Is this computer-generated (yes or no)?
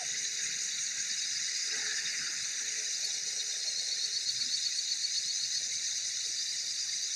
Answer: no